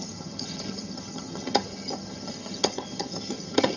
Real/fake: fake